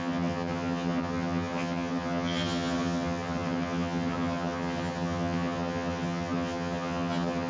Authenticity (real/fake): fake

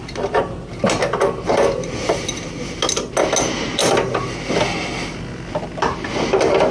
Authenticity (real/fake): real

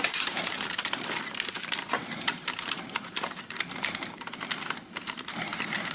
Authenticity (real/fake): fake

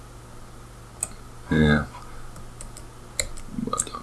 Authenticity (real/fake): real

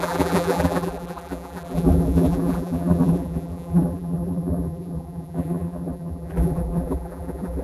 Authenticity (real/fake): fake